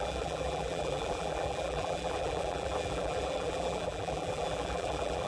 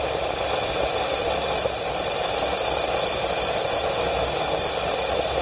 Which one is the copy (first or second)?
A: first